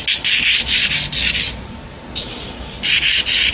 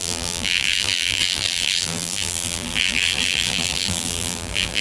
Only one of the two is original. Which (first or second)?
first